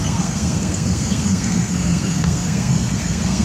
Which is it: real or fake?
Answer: fake